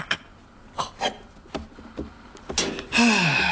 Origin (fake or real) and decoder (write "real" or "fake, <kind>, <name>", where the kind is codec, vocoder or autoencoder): real